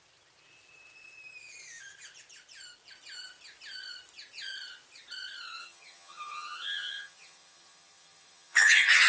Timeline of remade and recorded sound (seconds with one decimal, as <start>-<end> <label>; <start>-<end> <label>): 0.0-5.6 recorded; 5.6-9.1 remade